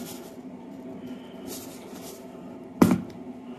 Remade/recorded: recorded